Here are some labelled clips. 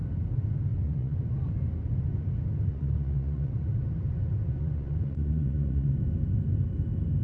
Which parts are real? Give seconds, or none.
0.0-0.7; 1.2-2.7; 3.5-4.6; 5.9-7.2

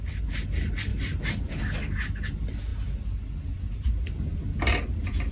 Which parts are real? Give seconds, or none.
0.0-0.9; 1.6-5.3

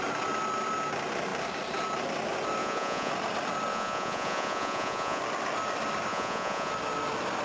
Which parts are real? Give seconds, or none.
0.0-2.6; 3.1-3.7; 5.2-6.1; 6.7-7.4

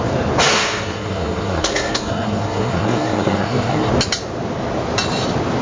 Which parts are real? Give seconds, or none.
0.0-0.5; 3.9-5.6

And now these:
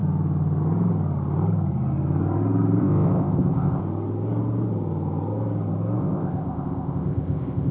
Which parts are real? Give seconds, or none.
0.0-2.8; 3.8-6.0

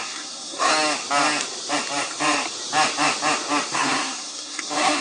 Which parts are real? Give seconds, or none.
0.7-3.7

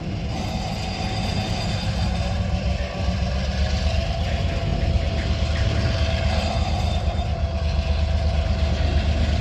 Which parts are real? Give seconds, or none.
0.0-9.4